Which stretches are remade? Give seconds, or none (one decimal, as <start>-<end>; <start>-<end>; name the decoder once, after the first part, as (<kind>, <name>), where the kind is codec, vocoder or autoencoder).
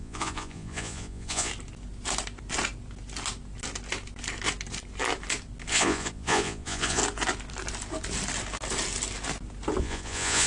0.0-1.5 (vocoder, Vocos); 5.7-7.0; 9.8-10.5